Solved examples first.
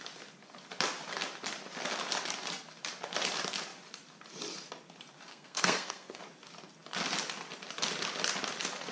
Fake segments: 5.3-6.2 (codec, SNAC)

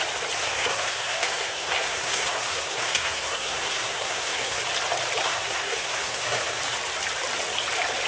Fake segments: 0.4-4.6 (codec, SNAC); 5.2-6.6

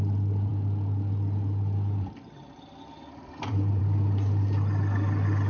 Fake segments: none

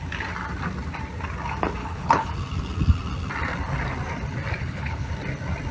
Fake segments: 1.8-2.3 (codec, HILCodec); 4.6-5.1

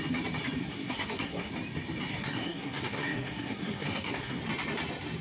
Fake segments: 0.6-1.5 (codec, SNAC); 2.1-4.4

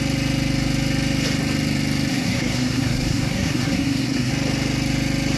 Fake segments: 2.1-4.3 (codec, SNAC)

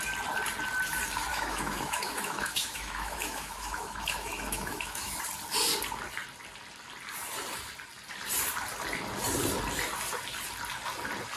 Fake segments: 1.3-5.2 (autoencoder, DAC-VAE)